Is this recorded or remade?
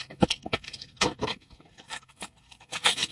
remade